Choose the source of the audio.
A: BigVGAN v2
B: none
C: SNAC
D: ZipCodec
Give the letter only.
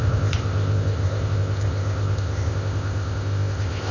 D